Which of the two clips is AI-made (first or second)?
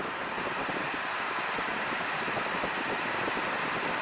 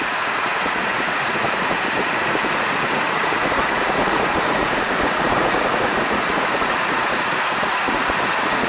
second